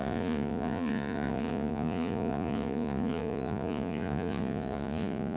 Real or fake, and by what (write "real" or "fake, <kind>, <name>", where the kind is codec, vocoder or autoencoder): fake, vocoder, Vocos